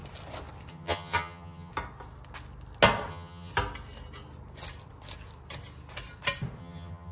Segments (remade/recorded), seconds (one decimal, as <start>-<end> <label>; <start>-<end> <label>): 0.0-0.7 recorded; 0.7-1.7 remade; 1.7-3.1 recorded; 3.1-3.5 remade; 3.5-6.6 recorded; 6.6-7.1 remade